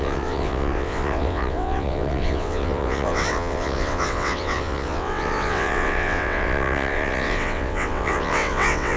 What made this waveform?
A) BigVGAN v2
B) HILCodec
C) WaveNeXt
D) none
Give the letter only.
C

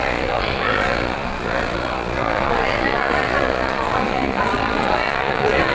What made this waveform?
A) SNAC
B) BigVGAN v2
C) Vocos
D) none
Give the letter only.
C